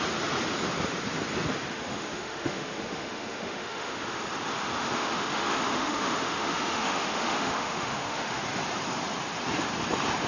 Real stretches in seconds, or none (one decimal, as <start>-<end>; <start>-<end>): 0.0-1.7; 4.2-4.8; 8.4-10.3

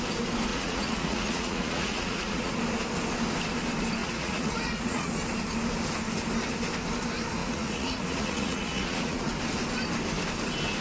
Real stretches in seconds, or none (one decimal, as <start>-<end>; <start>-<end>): 0.0-0.5; 2.5-4.0; 5.1-7.4; 9.3-10.8

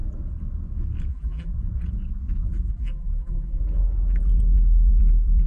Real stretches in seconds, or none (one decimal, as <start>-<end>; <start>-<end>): 0.0-1.1; 1.5-2.7; 3.6-5.5

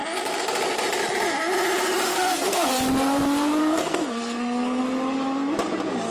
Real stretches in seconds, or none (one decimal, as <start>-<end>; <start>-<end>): 0.0-2.1; 2.7-3.6; 4.8-6.1

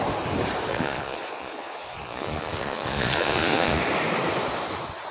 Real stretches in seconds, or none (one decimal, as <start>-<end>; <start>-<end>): 0.0-0.7; 3.8-5.1

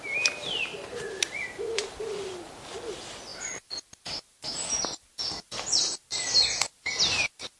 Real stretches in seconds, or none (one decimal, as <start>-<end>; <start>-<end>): 0.0-7.6

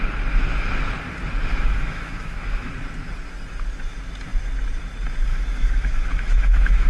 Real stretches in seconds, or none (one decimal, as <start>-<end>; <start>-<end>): 0.0-1.5; 2.7-5.3